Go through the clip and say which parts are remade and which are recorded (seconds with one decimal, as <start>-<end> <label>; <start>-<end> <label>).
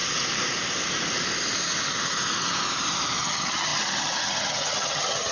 0.0-3.2 recorded; 3.2-5.3 remade